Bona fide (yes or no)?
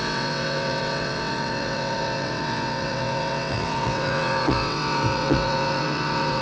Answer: no